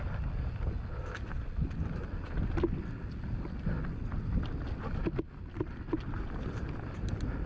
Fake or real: real